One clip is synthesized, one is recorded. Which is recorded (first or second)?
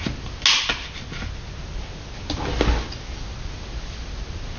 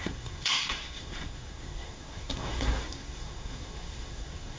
first